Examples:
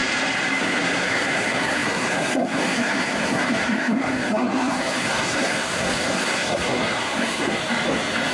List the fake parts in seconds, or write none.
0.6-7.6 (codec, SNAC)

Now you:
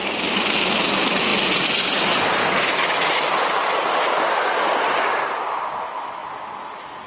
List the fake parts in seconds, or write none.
0.0-0.6 (vocoder, BigVGAN v2)

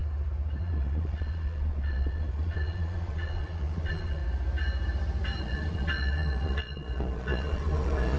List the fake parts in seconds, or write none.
0.6-4.2 (vocoder, Vocos); 5.4-8.2

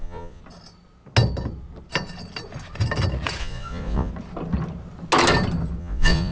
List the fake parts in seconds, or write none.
0.0-0.4 (vocoder, Vocos); 3.4-4.1; 5.8-6.3

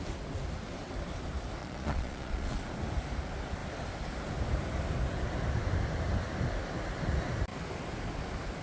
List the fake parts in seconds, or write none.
1.6-2.6 (vocoder, Vocos)

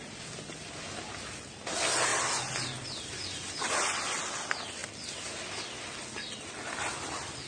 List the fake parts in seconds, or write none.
none

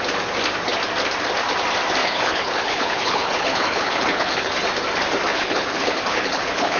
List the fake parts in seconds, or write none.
2.0-4.5 (codec, HILCodec); 5.3-6.8

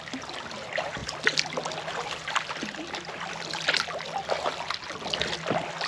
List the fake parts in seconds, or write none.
none